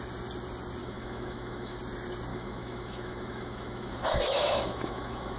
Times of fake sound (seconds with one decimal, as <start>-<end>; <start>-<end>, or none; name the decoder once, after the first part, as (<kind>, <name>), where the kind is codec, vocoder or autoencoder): 0.8-1.8 (autoencoder, DAC-VAE); 2.3-5.4

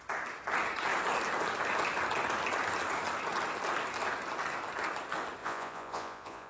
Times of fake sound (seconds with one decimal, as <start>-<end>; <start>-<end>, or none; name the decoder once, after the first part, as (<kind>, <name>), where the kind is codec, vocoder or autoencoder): 5.4-6.5 (vocoder, Vocos)